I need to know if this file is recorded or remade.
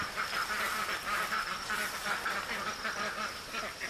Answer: recorded